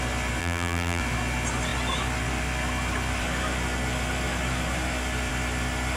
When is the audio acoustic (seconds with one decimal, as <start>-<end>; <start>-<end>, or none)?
0.0-0.4; 1.0-6.0